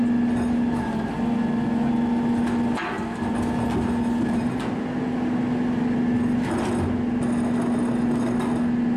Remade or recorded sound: recorded